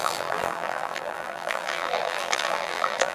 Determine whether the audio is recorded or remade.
remade